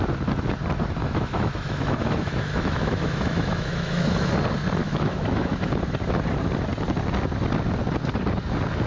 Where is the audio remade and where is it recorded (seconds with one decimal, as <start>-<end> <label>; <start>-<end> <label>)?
0.0-1.0 recorded; 1.0-4.3 remade; 4.3-4.8 recorded; 4.8-5.8 remade; 5.8-8.9 recorded

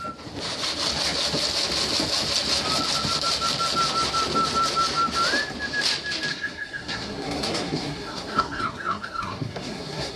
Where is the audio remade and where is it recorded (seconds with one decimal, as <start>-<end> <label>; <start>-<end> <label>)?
0.0-6.3 recorded; 6.3-10.2 remade

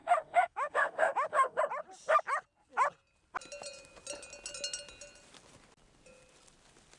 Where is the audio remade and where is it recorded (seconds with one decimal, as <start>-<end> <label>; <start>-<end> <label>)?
0.0-1.6 remade; 1.6-7.0 recorded

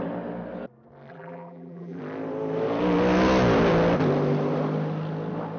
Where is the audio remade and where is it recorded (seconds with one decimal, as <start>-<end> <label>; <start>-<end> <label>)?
0.0-1.1 recorded; 1.1-2.0 remade; 2.0-5.6 recorded

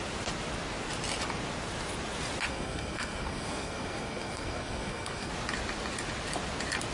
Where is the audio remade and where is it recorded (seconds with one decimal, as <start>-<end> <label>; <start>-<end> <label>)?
0.0-2.5 recorded; 2.5-5.3 remade; 5.3-6.9 recorded

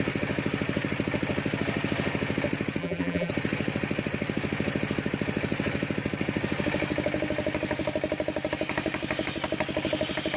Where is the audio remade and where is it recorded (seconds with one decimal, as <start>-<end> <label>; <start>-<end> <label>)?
0.0-2.8 recorded; 2.8-3.3 remade; 3.3-10.4 recorded

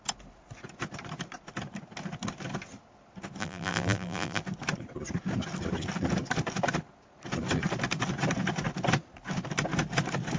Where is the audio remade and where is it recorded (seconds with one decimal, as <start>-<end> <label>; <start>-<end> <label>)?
0.0-3.4 recorded; 3.4-4.4 remade; 4.4-10.4 recorded

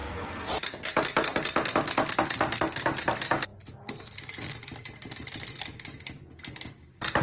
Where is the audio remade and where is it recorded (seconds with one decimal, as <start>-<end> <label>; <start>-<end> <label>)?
0.0-0.5 remade; 0.5-7.2 recorded